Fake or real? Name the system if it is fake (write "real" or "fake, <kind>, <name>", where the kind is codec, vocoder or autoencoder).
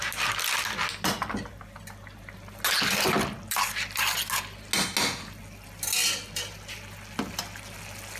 real